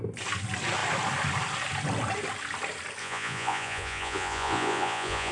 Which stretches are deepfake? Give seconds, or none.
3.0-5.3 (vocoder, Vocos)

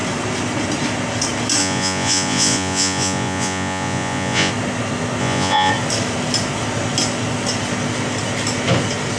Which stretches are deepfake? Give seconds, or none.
1.6-4.5 (vocoder, Vocos); 5.2-5.7

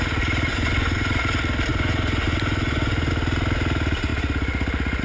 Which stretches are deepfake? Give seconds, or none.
0.5-1.1 (vocoder, Vocos); 1.7-3.1

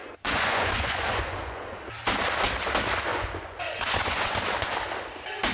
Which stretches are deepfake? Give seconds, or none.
0.0-1.8 (vocoder, Vocos); 3.1-4.4